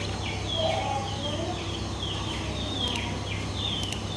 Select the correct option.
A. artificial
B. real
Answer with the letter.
B